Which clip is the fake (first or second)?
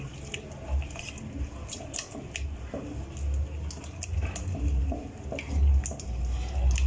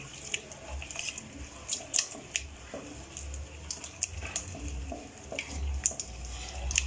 second